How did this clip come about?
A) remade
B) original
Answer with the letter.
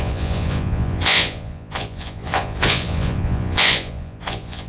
A